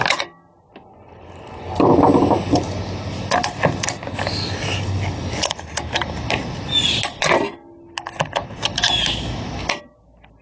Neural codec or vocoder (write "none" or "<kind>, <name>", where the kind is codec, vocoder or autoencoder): none